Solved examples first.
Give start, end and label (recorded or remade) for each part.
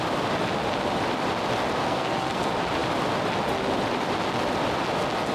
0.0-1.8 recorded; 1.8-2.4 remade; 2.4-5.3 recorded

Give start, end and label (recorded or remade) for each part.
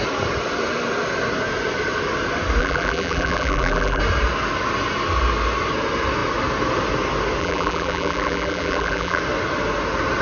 0.0-2.6 recorded; 2.6-4.0 remade; 4.0-7.4 recorded; 7.4-9.2 remade; 9.2-10.2 recorded